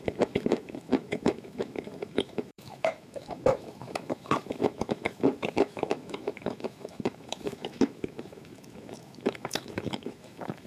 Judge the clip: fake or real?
fake